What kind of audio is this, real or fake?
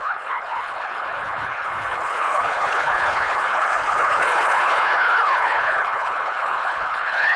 fake